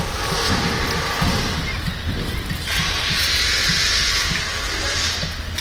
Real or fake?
real